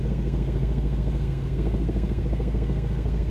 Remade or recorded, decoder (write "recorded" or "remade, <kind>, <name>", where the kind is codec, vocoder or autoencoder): remade, codec, SNAC